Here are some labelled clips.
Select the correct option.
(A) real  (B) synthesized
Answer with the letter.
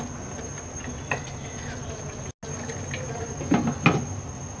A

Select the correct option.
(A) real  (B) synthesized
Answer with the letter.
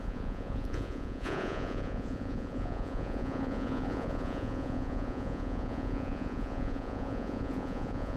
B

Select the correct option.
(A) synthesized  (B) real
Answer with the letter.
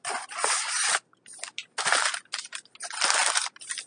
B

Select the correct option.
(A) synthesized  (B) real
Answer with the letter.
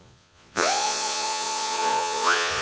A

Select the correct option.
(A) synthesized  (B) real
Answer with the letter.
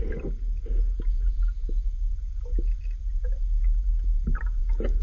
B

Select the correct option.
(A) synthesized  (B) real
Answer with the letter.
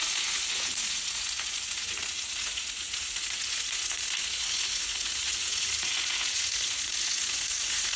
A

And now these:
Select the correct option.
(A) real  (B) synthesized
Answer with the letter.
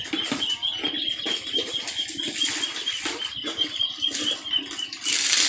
A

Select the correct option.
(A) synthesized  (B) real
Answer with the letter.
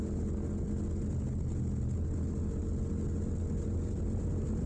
B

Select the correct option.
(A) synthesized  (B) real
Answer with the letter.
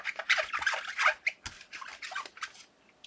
B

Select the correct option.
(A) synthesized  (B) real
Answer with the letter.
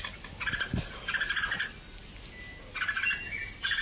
B